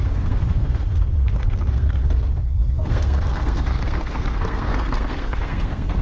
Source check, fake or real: fake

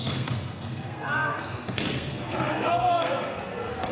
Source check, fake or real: fake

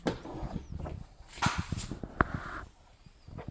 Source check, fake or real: real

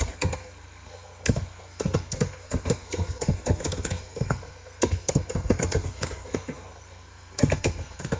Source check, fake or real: fake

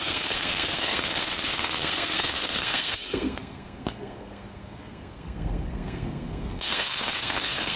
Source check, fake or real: fake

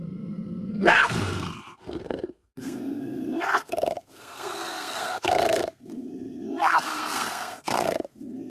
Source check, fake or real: fake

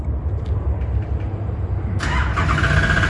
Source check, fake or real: real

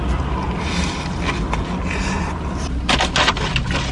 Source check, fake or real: real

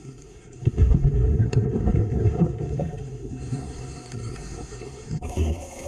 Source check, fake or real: fake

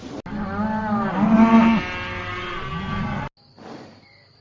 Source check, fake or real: real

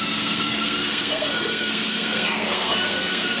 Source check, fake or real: fake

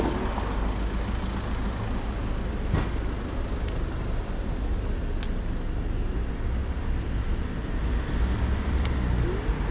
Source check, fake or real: real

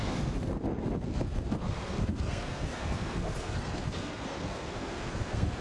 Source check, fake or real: fake